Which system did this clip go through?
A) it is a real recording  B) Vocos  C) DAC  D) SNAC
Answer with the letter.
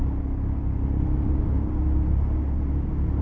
A